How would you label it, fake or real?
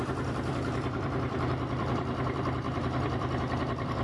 fake